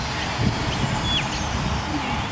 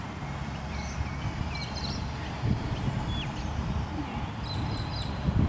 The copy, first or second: second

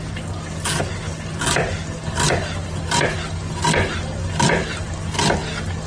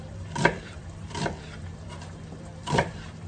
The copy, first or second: second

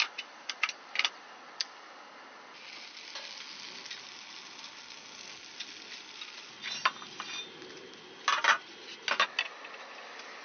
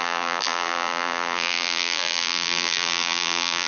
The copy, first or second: second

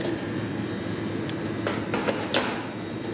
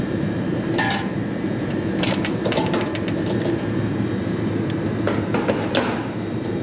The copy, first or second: second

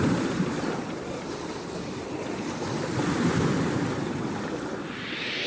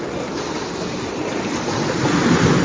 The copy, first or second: first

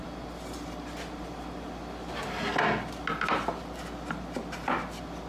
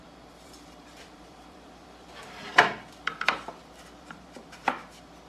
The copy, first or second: second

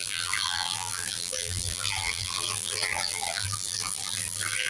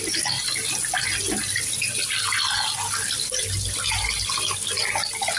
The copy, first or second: first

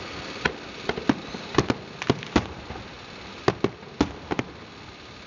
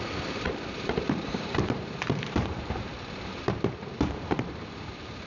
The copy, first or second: second